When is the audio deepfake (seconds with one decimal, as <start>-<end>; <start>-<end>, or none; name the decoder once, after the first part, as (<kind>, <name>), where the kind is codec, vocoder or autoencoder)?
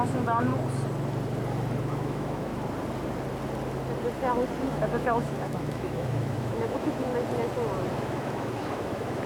0.0-0.5 (autoencoder, DAC-VAE); 1.8-2.5; 4.7-7.1; 7.9-9.3